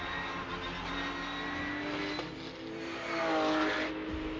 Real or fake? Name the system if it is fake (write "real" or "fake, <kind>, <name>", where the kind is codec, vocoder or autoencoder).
real